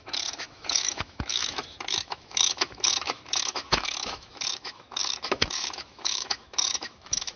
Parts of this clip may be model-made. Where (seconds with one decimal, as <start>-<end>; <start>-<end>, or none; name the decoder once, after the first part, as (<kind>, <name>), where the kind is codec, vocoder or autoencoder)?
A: 0.0-7.4 (autoencoder, DAC-VAE)